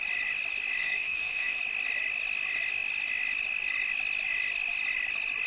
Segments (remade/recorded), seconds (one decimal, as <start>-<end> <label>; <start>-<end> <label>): 0.0-0.8 recorded; 0.8-1.6 remade; 1.6-5.5 recorded